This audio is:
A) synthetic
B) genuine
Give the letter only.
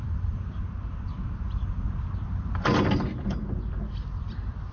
A